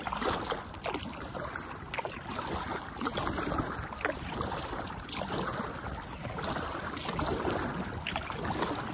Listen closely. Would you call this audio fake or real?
real